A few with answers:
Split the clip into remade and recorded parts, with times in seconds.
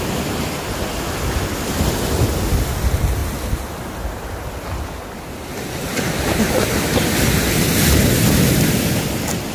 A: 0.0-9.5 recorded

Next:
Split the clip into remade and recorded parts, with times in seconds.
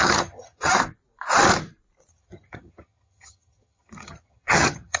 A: 0.0-0.7 remade; 0.7-2.1 recorded; 2.1-5.0 remade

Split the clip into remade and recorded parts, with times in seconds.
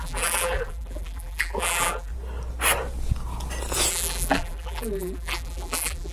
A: 0.0-2.1 remade; 2.1-3.9 recorded; 3.9-6.1 remade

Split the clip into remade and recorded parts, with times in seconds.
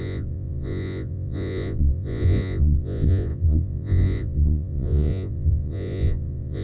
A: 0.0-6.6 remade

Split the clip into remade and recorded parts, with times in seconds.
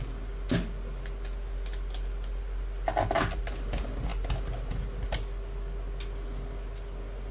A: 0.0-7.3 recorded